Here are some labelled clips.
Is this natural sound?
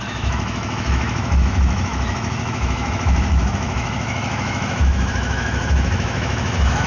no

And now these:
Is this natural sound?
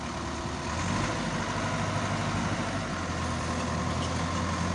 yes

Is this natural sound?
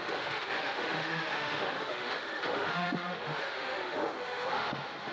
no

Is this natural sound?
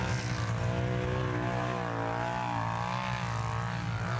yes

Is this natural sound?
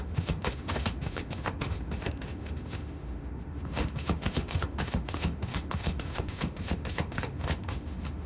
no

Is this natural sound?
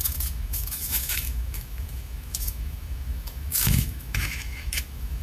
no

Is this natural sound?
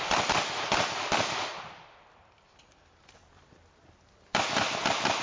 yes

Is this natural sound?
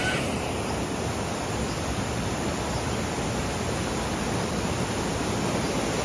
yes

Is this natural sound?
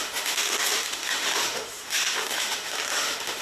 no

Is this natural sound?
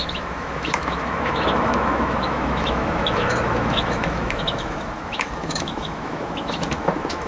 no